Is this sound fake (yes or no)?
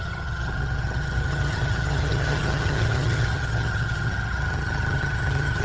yes